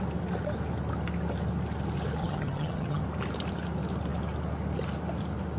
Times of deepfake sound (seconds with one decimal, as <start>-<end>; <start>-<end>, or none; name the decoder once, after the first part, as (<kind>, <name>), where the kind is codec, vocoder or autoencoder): 2.2-3.0 (vocoder, HiFi-GAN)